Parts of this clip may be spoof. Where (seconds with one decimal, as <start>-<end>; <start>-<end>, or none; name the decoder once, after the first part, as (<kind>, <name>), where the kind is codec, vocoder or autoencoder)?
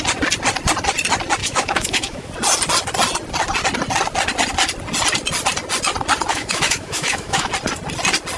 1.4-2.3 (autoencoder, DAC-VAE); 6.3-7.5